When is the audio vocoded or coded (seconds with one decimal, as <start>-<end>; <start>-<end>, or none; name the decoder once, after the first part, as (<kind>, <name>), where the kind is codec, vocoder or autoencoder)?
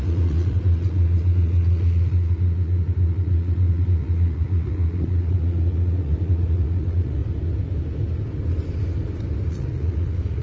0.0-7.2 (vocoder, Vocos); 9.5-10.4